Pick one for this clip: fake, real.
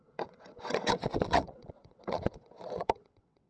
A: fake